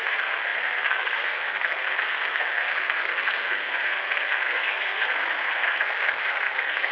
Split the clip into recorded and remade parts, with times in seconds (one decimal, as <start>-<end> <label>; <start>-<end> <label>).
0.0-6.9 remade